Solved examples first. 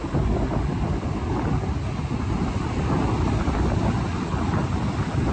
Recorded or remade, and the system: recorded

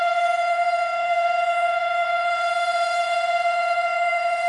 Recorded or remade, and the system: remade, vocoder, Vocos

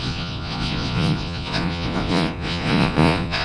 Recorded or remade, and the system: remade, vocoder, Vocos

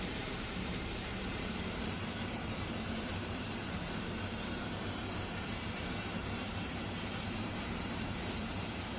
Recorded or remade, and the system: remade, vocoder, BigVGAN v2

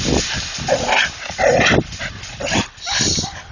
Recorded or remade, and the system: recorded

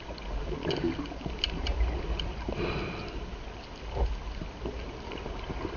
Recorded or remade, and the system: recorded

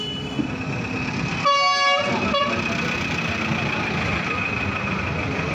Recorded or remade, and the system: recorded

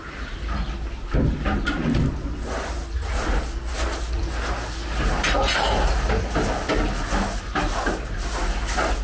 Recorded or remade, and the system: recorded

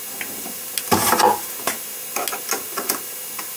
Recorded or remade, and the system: recorded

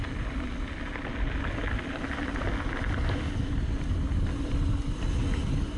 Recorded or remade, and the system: recorded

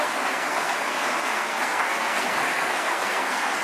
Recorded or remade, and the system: remade, codec, SNAC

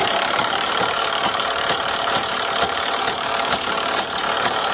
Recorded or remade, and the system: remade, vocoder, BigVGAN v2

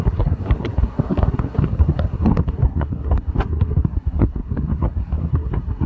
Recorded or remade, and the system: remade, codec, SNAC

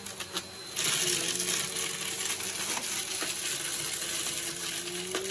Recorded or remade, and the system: recorded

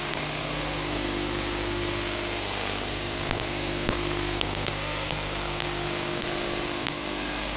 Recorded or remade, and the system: remade, codec, SNAC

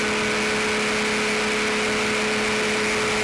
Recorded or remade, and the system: recorded